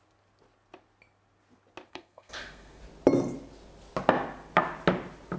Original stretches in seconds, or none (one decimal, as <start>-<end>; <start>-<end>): 0.0-1.9; 2.8-5.4